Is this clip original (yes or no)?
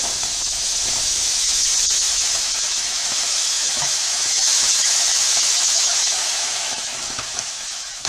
no